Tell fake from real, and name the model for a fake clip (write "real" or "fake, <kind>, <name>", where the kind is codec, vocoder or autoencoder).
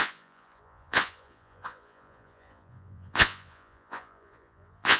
fake, vocoder, Vocos